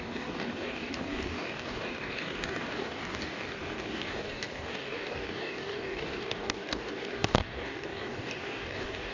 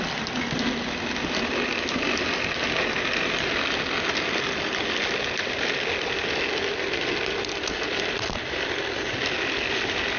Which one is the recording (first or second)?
second